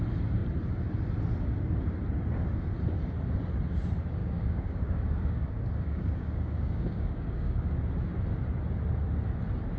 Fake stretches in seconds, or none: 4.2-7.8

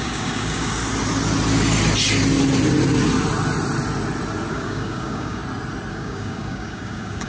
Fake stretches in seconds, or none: 0.0-0.8; 4.5-5.4; 5.9-7.3

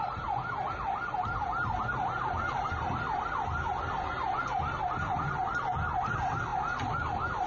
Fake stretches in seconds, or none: none

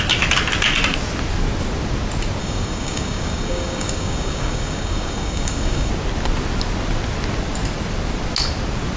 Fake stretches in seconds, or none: 2.4-5.9

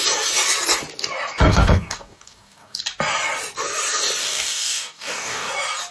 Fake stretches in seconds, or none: 1.5-2.8; 4.2-5.5

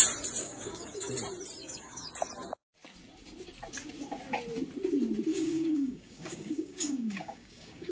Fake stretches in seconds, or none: 0.4-1.1; 1.6-2.1; 5.3-7.9

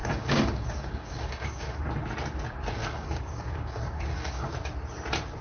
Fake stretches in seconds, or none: 0.0-1.8; 2.8-4.5

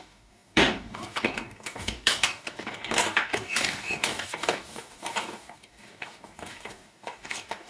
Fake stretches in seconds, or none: 0.0-7.7